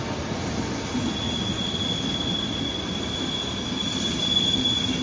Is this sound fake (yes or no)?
no